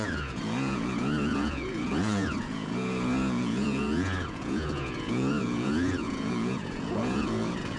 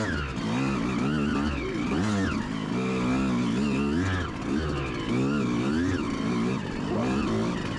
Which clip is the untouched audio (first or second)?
second